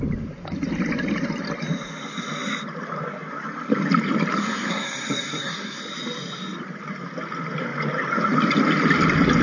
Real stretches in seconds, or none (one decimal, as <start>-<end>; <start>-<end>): 0.0-4.4; 5.8-9.4